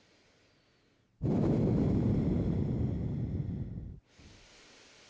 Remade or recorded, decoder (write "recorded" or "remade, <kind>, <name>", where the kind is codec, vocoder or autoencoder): recorded